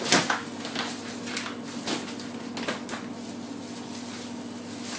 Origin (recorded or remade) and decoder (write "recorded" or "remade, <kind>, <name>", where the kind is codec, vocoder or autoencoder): recorded